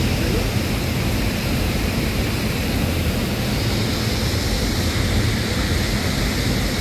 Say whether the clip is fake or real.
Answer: real